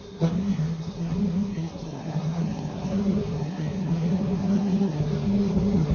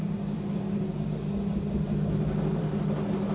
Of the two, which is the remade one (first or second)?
first